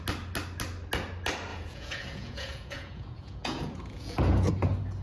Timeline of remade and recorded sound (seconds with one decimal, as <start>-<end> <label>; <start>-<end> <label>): 0.0-1.5 recorded; 1.5-4.5 remade; 4.5-5.0 recorded